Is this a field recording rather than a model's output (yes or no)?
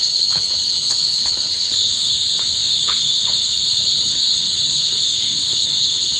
no